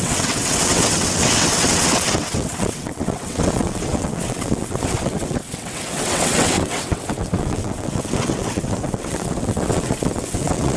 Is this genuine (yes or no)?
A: no